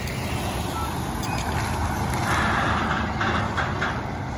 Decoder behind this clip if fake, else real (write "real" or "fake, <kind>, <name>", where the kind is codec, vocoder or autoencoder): real